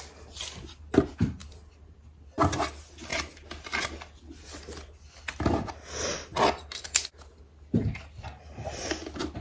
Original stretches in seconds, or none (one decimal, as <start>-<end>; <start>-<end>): 0.0-9.4